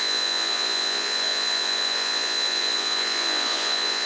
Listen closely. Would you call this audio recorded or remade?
remade